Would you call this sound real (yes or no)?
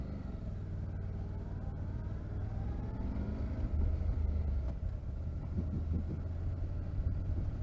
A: yes